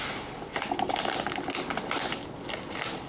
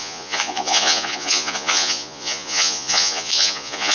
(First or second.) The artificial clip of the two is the second